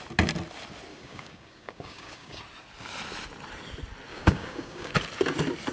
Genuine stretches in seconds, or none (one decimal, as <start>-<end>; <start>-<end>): 0.0-0.9; 2.4-4.1; 4.9-5.7